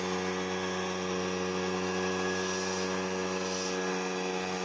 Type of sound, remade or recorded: recorded